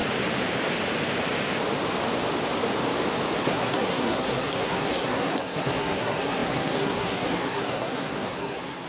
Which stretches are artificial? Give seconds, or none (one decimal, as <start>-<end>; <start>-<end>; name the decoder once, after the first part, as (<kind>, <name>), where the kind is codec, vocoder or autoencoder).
3.4-8.9 (codec, SNAC)